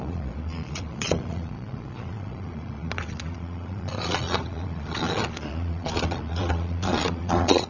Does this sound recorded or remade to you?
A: remade